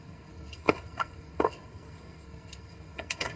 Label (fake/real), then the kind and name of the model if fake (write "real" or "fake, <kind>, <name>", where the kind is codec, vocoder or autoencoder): fake, codec, SNAC